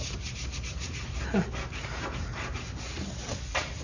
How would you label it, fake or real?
fake